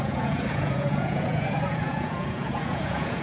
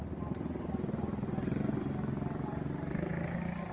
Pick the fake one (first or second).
first